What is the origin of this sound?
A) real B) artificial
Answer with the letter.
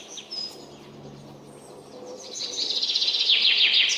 A